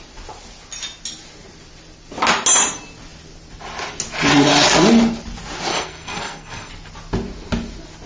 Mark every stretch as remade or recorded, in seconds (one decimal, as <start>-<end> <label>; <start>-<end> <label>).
0.0-5.7 recorded; 5.7-6.7 remade; 6.7-8.1 recorded